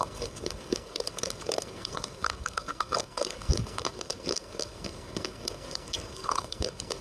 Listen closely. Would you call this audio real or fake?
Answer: fake